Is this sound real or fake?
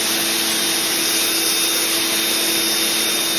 real